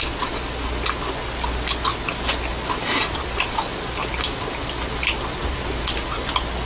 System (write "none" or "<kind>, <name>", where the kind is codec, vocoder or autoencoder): none